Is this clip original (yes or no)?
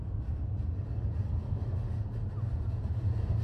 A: yes